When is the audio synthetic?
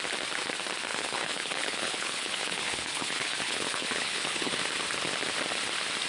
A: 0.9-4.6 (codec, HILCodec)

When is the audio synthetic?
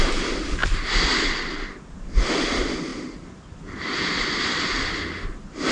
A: 0.0-0.6 (vocoder, BigVGAN v2); 2.5-5.7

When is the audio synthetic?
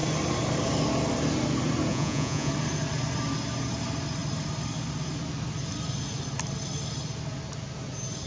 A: 1.9-2.5 (vocoder, Vocos)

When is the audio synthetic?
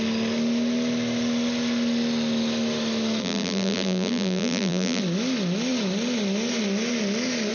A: 3.2-5.0 (vocoder, BigVGAN v2)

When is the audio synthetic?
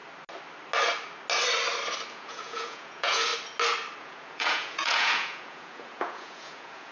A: 2.1-3.3 (vocoder, Vocos); 4.0-6.9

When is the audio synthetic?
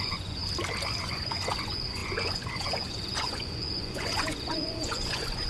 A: 0.0-0.4 (vocoder, Vocos); 1.0-5.5